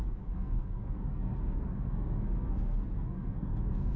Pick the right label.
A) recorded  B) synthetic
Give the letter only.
B